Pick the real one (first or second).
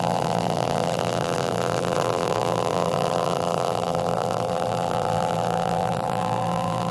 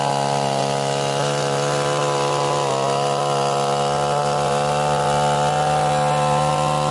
second